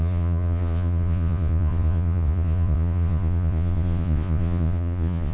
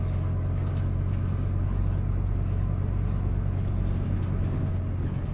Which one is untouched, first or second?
second